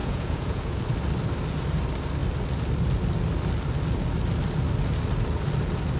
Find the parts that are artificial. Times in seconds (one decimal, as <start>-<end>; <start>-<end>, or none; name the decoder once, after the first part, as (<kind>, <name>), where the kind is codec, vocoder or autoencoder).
0.0-0.8 (vocoder, Vocos)

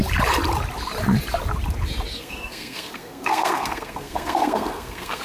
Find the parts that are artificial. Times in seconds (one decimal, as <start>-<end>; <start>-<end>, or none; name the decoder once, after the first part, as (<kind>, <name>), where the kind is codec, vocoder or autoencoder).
2.1-5.2 (codec, SNAC)